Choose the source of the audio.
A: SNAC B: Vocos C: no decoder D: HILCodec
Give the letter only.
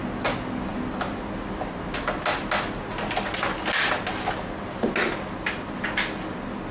C